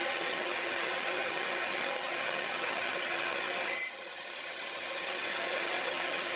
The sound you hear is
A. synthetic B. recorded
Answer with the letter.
A